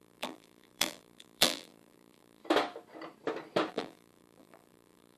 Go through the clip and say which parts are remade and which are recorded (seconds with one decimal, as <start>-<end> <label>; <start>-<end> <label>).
0.0-2.4 remade; 2.4-3.7 recorded; 3.7-5.2 remade